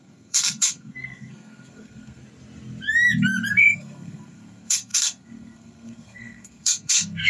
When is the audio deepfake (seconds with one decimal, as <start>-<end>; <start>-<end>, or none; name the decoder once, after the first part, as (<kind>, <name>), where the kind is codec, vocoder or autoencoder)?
0.0-2.2 (codec, SNAC); 3.5-7.3